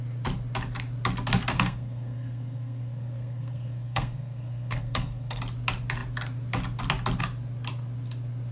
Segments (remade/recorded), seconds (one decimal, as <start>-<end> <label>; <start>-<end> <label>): 0.0-1.5 recorded; 1.5-5.4 remade; 5.4-8.5 recorded